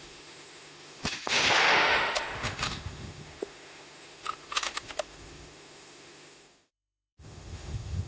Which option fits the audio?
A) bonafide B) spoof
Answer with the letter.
B